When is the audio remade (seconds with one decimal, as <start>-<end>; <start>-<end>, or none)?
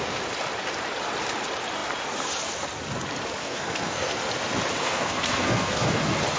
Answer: 3.4-4.2; 4.8-6.0